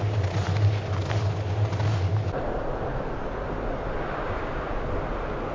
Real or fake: real